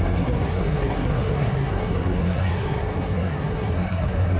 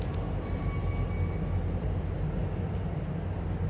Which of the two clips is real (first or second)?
second